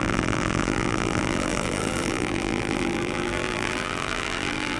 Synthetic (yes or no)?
yes